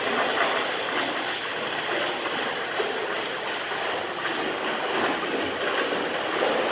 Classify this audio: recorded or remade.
recorded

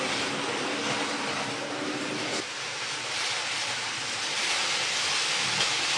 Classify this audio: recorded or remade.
recorded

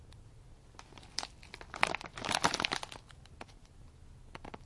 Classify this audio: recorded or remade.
recorded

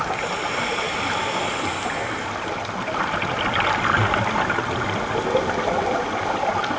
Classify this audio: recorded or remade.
recorded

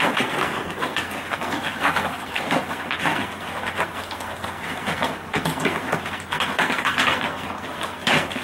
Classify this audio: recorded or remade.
remade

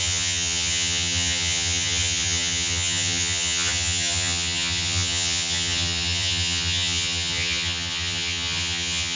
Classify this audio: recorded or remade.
remade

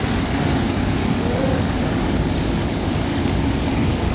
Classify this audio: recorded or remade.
remade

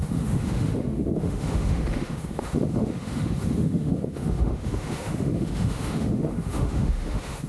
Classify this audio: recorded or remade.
remade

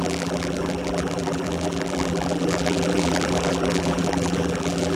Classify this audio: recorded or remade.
remade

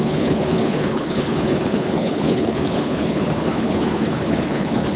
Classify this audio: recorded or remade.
remade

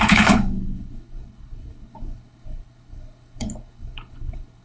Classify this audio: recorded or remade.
remade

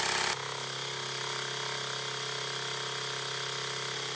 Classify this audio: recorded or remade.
recorded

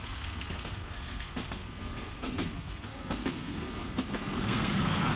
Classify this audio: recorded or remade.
remade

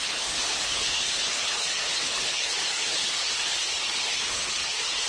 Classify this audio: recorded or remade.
remade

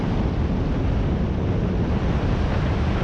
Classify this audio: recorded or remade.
remade